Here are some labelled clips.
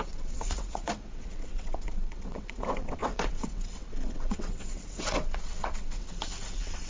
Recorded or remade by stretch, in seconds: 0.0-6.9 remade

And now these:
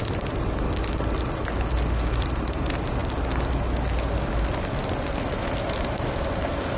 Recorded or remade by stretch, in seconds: 0.0-6.8 recorded